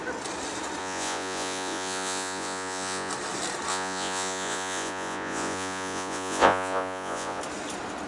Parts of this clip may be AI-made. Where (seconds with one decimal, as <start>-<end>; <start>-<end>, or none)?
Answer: 0.8-3.1; 3.7-7.4